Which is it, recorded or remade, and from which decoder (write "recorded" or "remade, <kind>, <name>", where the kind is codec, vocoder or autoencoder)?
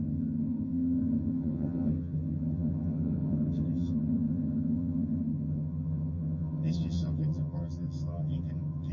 remade, vocoder, HiFi-GAN